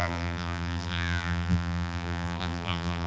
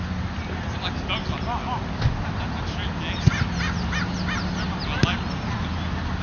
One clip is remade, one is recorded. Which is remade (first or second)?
first